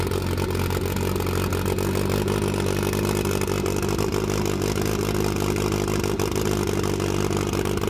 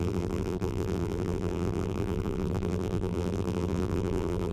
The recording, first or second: first